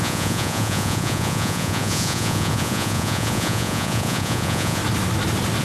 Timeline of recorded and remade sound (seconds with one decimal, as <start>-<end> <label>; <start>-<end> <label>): 0.0-4.8 remade; 4.8-5.6 recorded